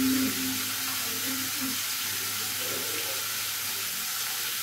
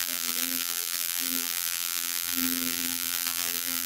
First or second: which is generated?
second